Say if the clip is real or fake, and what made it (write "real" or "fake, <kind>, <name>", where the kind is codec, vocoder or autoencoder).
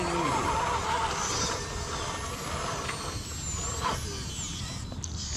real